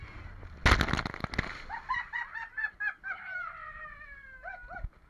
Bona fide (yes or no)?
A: yes